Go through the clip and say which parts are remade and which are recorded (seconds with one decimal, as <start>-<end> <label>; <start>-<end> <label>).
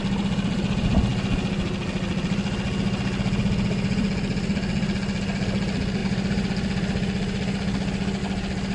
0.0-8.7 recorded